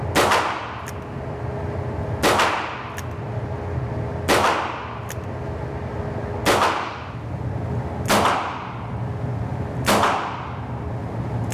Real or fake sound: real